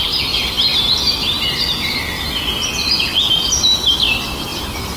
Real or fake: real